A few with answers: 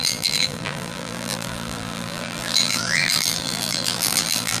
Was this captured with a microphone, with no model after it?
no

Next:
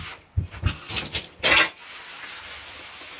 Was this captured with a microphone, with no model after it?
yes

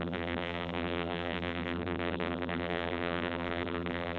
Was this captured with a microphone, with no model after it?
no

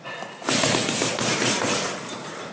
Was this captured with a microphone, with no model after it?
yes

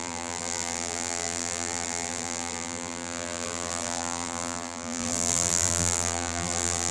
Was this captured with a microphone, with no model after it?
no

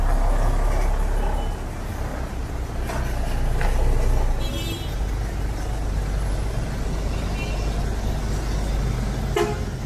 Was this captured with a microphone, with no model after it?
yes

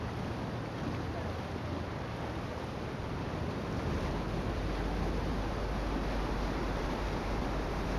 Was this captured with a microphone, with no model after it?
yes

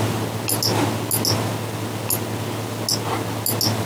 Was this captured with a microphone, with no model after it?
yes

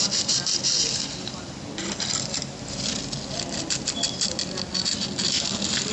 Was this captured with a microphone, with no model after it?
no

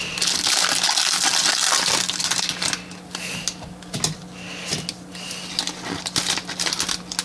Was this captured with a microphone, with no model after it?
yes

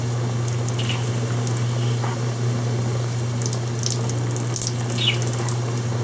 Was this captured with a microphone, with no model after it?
yes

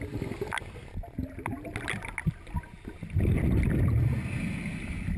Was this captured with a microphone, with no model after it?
yes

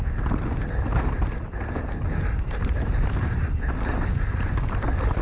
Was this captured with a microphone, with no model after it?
yes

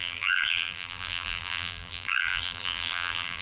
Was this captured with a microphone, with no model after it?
no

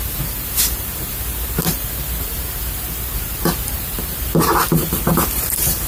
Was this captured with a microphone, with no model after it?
no